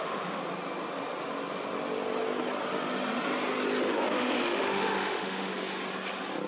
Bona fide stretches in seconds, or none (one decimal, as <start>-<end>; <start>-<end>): 0.4-3.8; 5.5-6.5